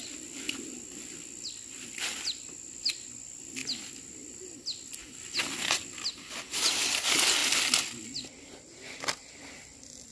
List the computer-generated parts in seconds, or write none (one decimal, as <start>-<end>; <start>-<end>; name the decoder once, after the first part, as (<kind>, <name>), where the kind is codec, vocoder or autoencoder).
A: none